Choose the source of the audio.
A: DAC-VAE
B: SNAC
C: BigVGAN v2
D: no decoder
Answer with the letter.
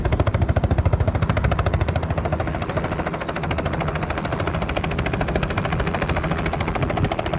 D